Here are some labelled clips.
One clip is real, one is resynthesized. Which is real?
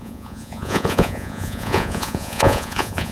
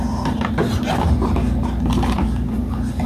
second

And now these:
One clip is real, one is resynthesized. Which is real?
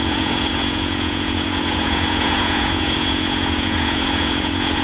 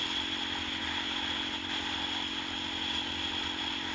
second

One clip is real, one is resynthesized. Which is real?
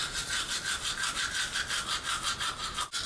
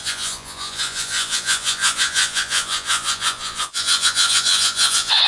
first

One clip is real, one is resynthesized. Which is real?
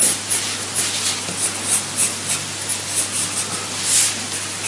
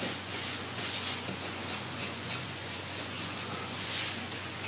first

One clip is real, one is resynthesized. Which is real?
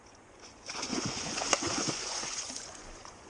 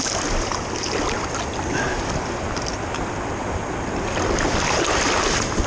second